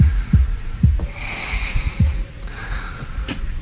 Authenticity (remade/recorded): remade